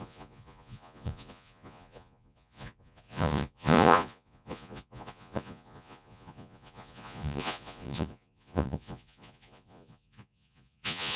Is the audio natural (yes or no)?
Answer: no